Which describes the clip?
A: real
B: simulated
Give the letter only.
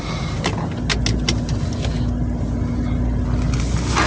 A